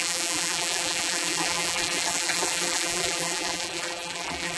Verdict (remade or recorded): remade